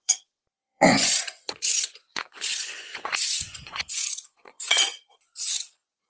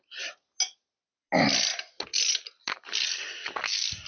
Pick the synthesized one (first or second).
first